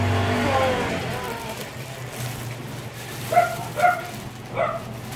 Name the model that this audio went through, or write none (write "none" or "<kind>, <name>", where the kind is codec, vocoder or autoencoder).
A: none